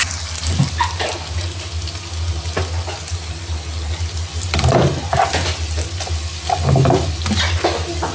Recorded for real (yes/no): yes